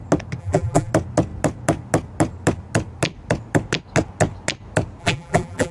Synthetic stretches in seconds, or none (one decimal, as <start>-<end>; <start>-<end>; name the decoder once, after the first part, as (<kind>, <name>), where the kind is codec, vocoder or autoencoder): 0.4-0.9 (vocoder, BigVGAN v2); 5.0-5.7